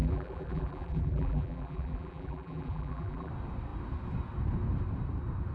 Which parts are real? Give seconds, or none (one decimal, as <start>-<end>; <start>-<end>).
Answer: 3.3-5.5